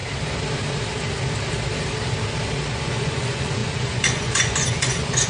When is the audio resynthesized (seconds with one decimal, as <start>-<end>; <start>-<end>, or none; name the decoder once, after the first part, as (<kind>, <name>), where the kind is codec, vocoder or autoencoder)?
2.7-5.3 (vocoder, Vocos)